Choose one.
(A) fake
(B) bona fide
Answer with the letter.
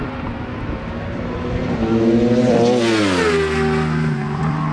B